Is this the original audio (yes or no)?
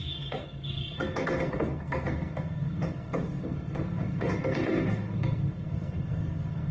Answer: no